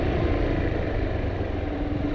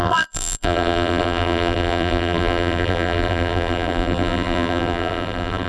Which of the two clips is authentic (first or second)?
first